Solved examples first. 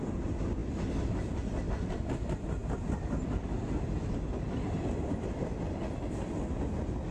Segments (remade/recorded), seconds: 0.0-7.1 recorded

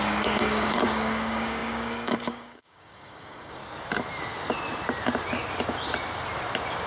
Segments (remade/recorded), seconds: 0.0-3.6 remade; 3.6-6.9 recorded

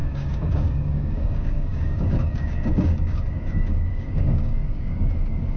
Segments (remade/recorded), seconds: 0.0-5.6 remade

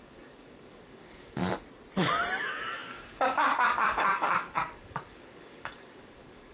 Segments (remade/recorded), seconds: 0.0-1.4 remade; 1.4-2.4 recorded; 2.4-6.5 remade

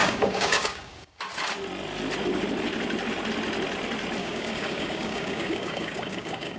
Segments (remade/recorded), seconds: 0.0-1.2 remade; 1.2-4.2 recorded; 4.2-6.6 remade

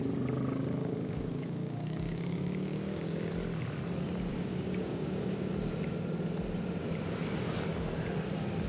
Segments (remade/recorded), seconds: 0.0-0.8 recorded; 0.8-3.3 remade; 3.3-4.3 recorded; 4.3-5.5 remade; 5.5-8.7 recorded

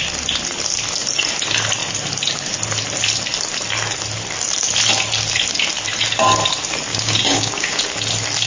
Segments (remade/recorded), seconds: 0.0-6.9 recorded; 6.9-7.8 remade; 7.8-8.5 recorded

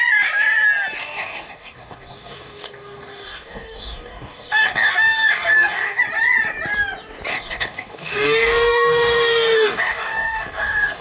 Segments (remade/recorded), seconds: 0.0-1.0 recorded; 1.0-6.0 remade; 6.0-7.3 recorded; 7.3-11.0 remade